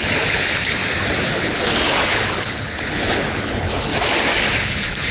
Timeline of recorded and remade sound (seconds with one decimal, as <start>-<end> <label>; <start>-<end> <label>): 0.0-0.8 remade; 0.8-1.3 recorded; 1.3-3.9 remade; 3.9-4.6 recorded; 4.6-5.1 remade